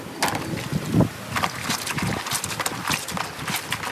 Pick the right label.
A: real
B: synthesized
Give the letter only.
A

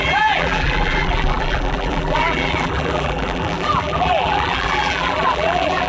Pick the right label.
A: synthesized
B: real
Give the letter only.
A